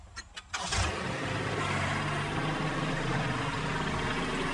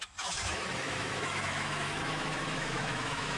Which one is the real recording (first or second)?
first